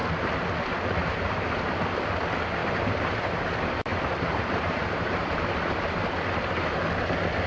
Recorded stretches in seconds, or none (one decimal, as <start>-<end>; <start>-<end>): 0.0-1.0; 1.6-2.6; 3.4-3.9; 5.4-7.5